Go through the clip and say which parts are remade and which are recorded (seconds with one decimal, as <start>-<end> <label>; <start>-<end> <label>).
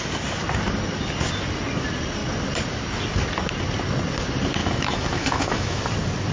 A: 0.0-4.6 recorded; 4.6-5.8 remade; 5.8-6.3 recorded